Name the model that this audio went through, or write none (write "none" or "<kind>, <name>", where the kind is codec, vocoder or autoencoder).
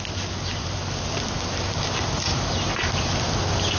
none